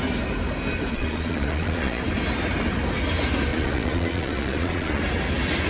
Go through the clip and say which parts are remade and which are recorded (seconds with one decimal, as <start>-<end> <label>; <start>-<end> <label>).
0.0-0.9 recorded; 0.9-2.0 remade; 2.0-3.5 recorded; 3.5-5.0 remade; 5.0-5.7 recorded